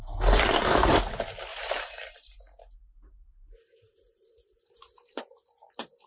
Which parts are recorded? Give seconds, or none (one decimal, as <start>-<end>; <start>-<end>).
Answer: 0.0-1.5; 5.2-6.1